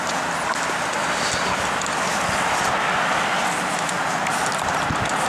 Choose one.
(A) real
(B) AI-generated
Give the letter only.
A